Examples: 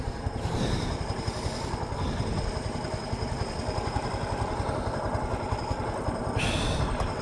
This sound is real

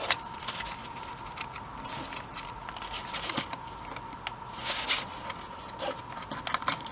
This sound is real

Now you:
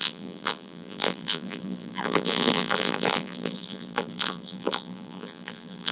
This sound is fake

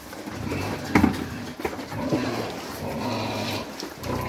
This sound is real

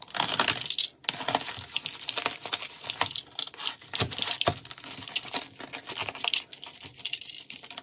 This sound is real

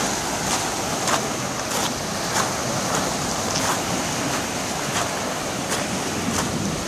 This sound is real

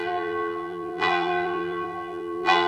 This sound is fake